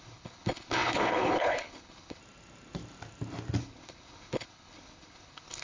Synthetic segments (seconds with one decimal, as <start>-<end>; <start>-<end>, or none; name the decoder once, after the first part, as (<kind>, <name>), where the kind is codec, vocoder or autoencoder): 0.0-2.2 (codec, HILCodec); 3.6-5.6